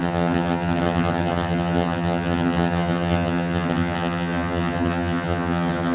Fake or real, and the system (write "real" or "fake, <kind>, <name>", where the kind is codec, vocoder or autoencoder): fake, vocoder, HiFi-GAN